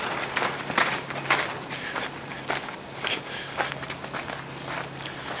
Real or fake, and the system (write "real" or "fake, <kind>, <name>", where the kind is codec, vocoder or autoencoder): real